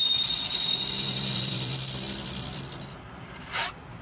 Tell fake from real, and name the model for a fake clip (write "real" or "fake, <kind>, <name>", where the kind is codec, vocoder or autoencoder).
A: fake, vocoder, BigVGAN v2